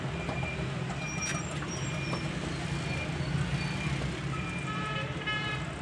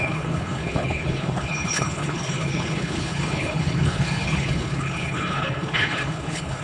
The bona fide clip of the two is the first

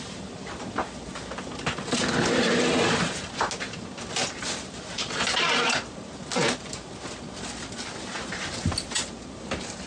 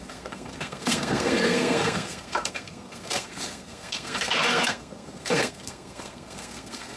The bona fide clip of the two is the first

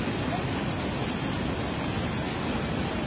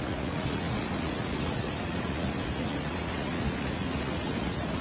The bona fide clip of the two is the first